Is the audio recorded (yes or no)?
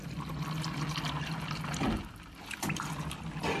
yes